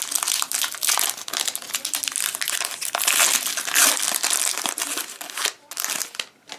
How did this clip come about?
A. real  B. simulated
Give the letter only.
A